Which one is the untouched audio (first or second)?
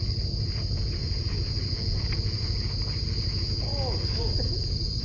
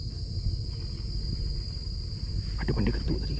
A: second